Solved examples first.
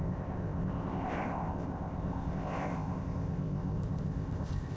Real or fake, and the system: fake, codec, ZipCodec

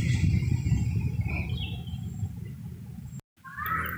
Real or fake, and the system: real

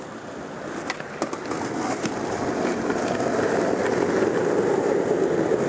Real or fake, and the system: real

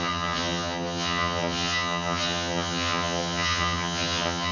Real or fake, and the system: fake, vocoder, HiFi-GAN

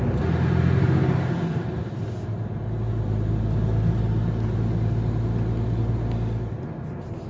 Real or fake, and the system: real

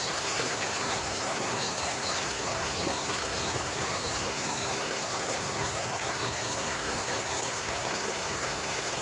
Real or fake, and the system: fake, codec, SNAC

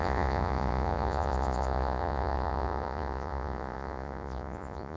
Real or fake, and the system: fake, vocoder, Vocos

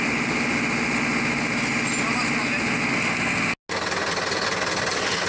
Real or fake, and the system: real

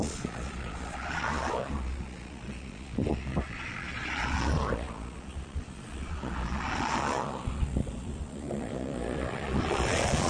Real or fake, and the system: fake, vocoder, Vocos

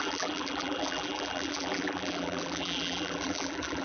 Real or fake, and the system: fake, vocoder, BigVGAN v2